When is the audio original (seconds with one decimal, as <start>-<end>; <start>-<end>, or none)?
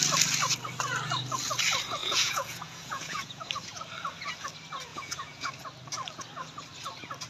0.0-2.0; 3.5-4.9; 5.5-7.3